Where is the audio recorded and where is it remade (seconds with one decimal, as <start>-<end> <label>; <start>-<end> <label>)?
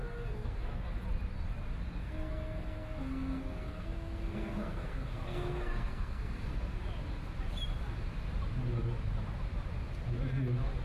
0.0-0.8 remade; 0.8-2.0 recorded; 2.0-6.8 remade; 6.8-10.8 recorded